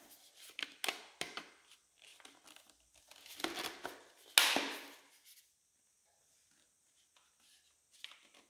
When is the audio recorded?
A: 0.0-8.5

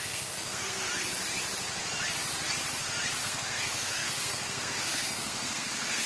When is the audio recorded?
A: 0.9-3.2

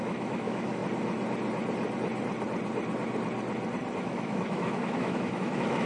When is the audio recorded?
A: 0.8-4.0

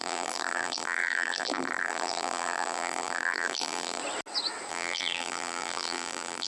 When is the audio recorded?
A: 4.0-4.7

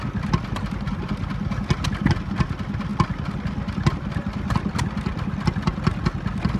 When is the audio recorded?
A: 0.0-6.6

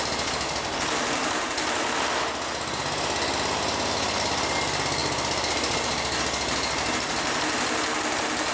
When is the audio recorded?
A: 0.0-8.5

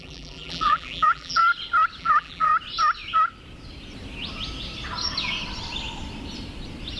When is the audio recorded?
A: 1.4-2.0; 2.5-7.0